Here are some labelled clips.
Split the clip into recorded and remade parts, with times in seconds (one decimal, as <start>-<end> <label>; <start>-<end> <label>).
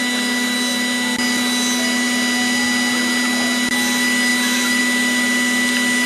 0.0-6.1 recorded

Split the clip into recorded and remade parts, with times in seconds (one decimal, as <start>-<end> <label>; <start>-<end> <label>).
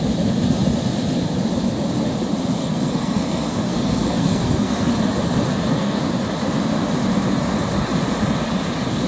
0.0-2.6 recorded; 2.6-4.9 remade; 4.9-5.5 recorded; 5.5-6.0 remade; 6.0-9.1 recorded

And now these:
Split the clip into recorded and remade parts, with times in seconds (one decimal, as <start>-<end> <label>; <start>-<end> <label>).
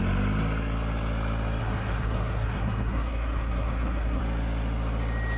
0.0-1.6 recorded; 1.6-4.2 remade; 4.2-5.4 recorded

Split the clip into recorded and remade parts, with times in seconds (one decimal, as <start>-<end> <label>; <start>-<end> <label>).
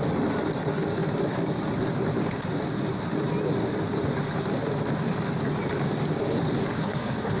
0.0-6.8 recorded; 6.8-7.4 remade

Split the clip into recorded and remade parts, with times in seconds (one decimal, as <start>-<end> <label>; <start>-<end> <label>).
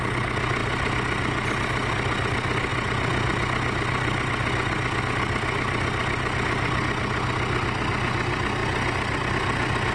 0.0-9.9 recorded